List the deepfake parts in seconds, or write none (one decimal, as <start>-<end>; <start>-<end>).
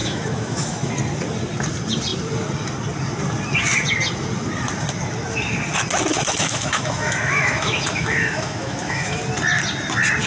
0.0-0.9; 6.1-9.2